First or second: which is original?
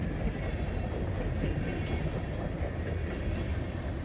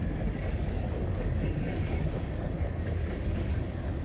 first